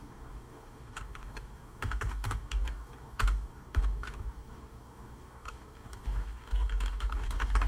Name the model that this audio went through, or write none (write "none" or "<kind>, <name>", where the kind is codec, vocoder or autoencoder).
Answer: codec, DAC